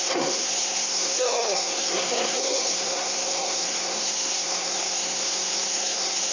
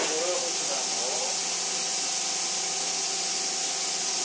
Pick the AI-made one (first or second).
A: first